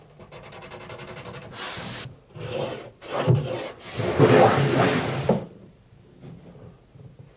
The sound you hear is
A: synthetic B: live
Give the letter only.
A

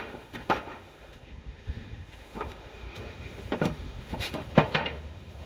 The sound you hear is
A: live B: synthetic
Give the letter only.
B